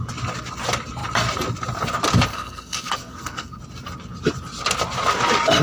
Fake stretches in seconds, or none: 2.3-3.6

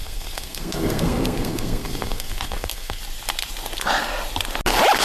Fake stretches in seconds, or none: 0.0-3.0

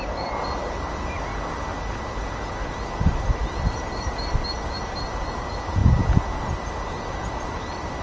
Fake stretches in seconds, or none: none

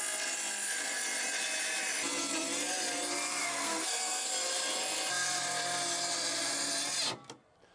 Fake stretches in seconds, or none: 3.4-4.3

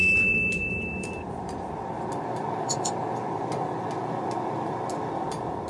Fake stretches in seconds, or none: none

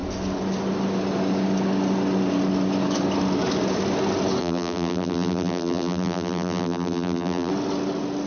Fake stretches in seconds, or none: 4.4-7.5

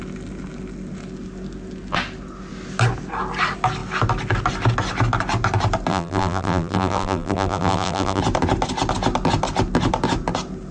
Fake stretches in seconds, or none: 5.9-8.2

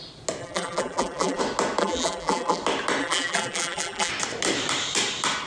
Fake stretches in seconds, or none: 0.4-1.4; 1.8-2.6; 3.0-4.1